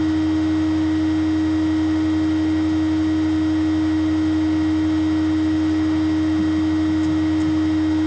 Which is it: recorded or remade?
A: recorded